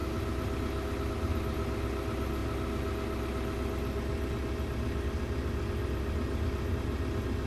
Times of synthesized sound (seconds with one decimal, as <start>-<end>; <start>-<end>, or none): none